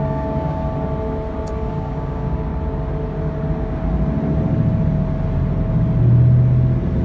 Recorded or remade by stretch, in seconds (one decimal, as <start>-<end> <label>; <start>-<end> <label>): 0.0-0.6 remade; 0.6-1.5 recorded; 1.5-2.5 remade; 2.5-7.0 recorded